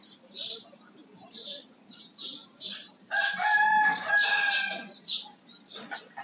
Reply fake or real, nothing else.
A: real